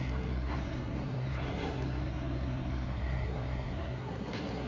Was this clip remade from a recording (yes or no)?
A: yes